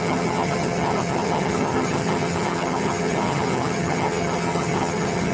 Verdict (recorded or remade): remade